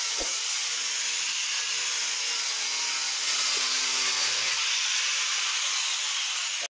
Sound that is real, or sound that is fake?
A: real